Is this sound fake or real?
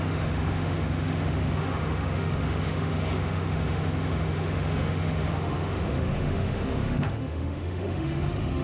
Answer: fake